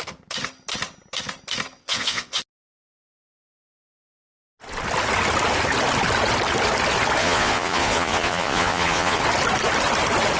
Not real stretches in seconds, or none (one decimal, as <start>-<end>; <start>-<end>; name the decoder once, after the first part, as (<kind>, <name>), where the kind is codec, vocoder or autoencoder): 1.8-2.4 (vocoder, Vocos); 7.2-9.2